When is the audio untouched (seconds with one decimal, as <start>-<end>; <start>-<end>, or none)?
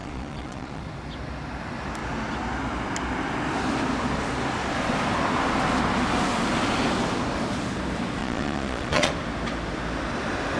0.8-8.2; 9.1-10.6